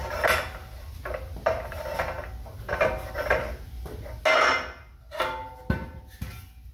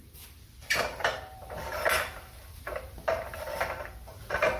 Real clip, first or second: first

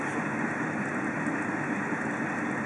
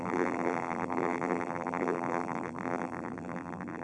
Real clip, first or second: first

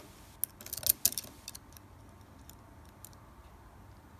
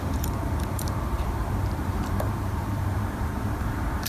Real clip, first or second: first